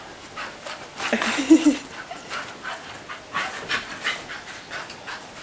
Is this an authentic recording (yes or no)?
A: yes